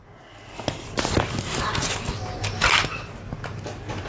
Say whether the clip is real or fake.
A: real